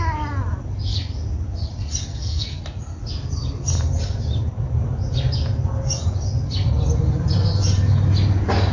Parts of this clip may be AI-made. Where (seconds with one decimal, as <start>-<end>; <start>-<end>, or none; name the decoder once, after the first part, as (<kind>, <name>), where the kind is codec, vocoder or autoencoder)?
2.1-2.6 (codec, SNAC)